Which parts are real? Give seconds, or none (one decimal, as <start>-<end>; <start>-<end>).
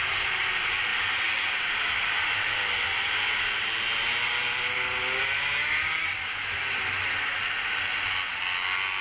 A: 0.0-9.0